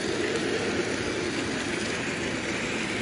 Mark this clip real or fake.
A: real